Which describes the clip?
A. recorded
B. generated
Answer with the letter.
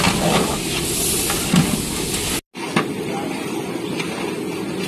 A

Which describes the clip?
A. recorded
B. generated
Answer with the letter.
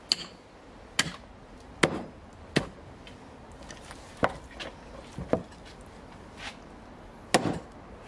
A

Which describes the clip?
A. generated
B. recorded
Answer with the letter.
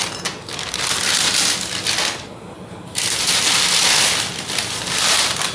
B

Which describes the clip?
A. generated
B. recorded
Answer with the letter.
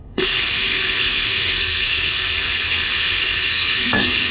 A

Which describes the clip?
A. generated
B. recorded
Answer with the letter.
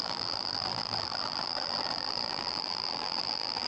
A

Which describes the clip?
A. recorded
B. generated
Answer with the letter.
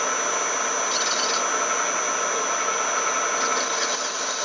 A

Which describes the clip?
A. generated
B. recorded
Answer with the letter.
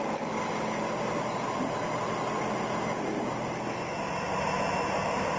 B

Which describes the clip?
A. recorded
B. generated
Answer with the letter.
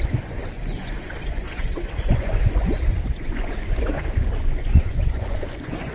B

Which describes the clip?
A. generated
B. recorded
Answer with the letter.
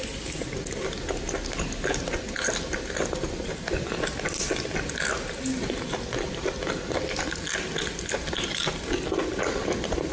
B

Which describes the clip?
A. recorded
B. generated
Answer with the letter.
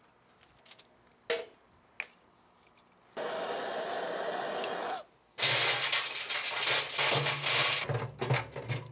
A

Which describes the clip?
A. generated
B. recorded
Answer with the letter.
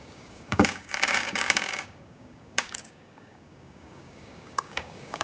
A